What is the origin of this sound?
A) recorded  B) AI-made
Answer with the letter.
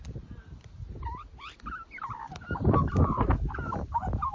B